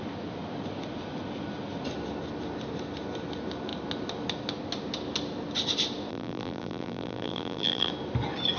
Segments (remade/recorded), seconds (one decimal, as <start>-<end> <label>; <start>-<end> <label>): 0.0-6.1 recorded; 6.1-7.9 remade; 7.9-8.6 recorded